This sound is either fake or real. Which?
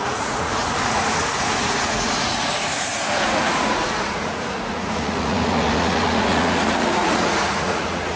fake